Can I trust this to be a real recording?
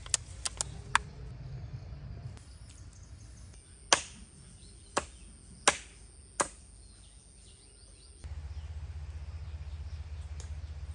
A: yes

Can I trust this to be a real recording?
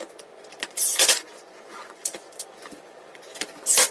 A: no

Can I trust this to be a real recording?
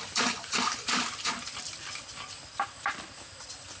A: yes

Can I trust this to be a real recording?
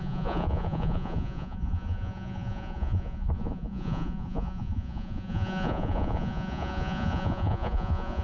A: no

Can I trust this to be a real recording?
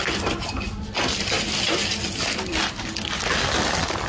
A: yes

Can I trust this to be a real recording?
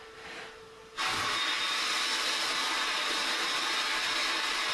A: yes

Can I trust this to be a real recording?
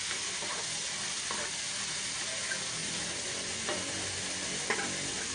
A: yes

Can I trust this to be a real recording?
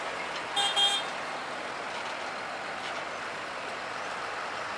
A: yes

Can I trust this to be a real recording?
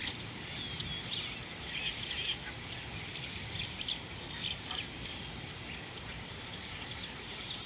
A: yes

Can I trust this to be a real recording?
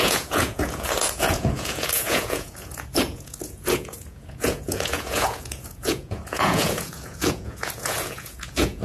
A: no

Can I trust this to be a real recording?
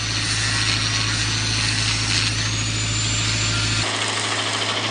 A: yes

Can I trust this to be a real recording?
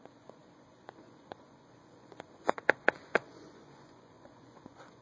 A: no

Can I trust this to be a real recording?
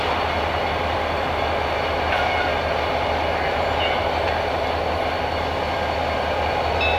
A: yes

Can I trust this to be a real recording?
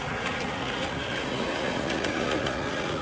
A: no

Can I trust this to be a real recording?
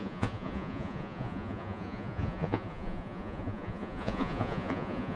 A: no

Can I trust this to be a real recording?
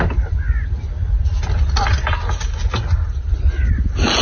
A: yes